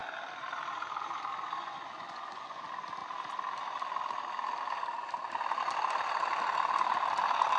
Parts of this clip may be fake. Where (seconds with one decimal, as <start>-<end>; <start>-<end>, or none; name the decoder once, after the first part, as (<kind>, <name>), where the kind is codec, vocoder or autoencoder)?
1.6-2.6 (vocoder, Vocos)